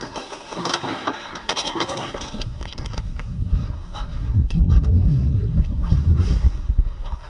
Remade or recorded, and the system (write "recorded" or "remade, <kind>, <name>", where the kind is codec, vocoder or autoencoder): remade, codec, SNAC